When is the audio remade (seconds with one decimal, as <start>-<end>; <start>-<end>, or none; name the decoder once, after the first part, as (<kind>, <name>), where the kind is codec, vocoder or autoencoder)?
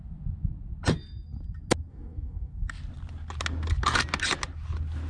1.9-2.5 (codec, DAC)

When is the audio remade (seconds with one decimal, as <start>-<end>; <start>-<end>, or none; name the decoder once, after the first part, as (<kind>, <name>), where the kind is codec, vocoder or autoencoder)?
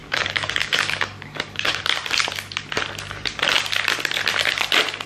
0.0-1.8 (codec, DAC)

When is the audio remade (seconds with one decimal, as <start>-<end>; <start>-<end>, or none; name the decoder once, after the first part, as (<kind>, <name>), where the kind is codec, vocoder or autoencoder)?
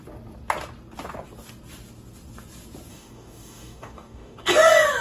2.9-4.5 (codec, DAC)